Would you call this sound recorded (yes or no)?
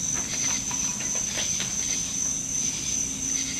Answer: yes